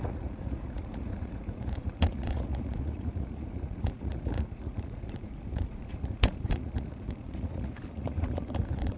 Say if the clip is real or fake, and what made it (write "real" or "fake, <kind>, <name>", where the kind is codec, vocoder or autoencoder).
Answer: fake, vocoder, Vocos